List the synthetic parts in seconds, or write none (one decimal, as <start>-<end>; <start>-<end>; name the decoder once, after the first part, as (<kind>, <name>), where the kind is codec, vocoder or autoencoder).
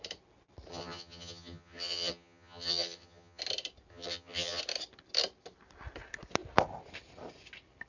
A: 0.7-3.4 (vocoder, HiFi-GAN); 3.9-4.6